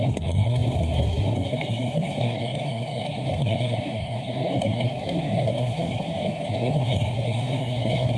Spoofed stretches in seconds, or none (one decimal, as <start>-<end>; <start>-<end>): 0.0-8.2